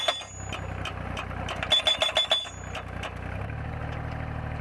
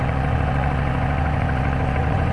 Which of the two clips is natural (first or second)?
first